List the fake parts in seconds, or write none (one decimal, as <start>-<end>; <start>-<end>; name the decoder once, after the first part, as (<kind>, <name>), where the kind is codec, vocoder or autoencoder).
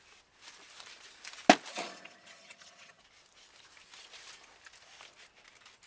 1.7-3.0 (vocoder, HiFi-GAN)